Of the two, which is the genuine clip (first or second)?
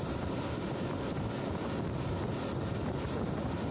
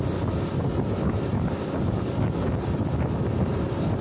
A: second